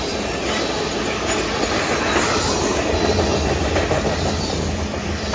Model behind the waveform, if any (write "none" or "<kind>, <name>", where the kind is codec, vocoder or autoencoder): none